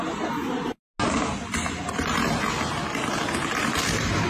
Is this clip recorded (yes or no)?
yes